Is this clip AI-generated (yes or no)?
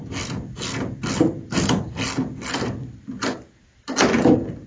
no